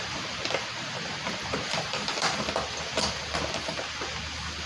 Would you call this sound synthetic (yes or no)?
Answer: no